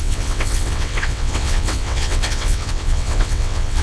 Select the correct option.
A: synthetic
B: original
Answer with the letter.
A